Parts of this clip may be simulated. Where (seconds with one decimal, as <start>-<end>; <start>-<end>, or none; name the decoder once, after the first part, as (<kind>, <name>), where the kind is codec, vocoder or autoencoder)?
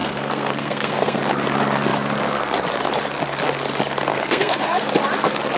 0.0-1.2 (codec, SNAC); 4.1-4.9